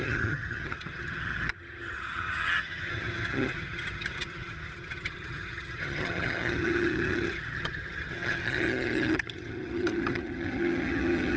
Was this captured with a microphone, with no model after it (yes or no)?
no